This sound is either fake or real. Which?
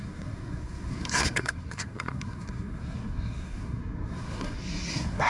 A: fake